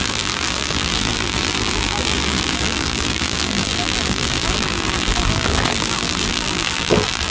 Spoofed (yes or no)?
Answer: yes